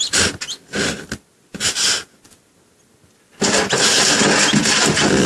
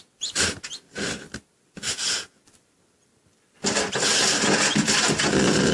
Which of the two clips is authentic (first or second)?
first